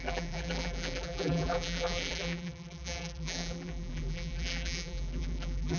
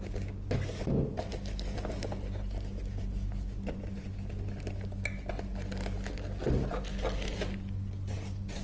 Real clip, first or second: second